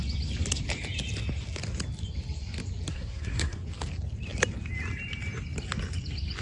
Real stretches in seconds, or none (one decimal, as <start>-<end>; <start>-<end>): 0.0-2.9; 3.6-6.4